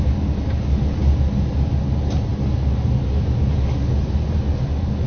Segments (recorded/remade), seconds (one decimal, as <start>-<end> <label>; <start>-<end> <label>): 0.0-5.1 recorded